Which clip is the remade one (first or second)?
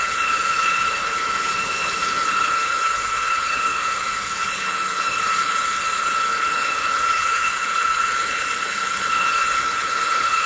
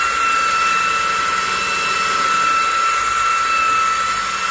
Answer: first